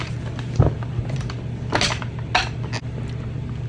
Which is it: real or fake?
real